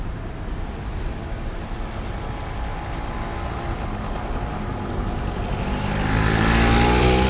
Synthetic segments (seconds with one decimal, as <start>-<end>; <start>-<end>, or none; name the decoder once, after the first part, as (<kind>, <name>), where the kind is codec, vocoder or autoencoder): 1.1-1.6 (codec, DAC)